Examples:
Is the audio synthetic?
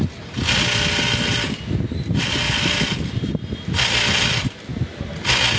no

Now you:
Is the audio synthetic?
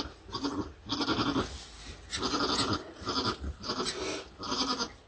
no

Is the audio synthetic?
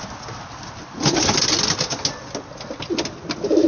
no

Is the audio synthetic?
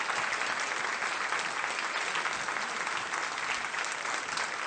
no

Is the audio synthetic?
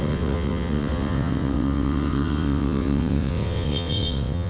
yes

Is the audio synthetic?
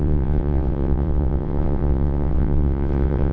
yes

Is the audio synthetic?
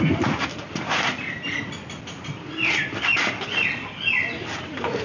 no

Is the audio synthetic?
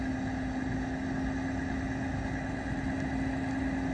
no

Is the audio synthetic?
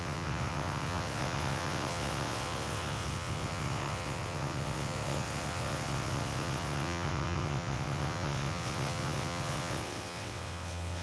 yes